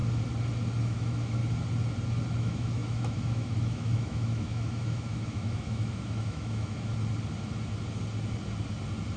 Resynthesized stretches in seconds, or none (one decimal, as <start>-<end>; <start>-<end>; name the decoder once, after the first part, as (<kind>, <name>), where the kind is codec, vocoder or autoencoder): 0.8-1.4 (autoencoder, DAC-VAE); 2.4-6.9